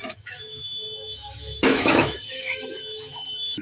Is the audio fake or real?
fake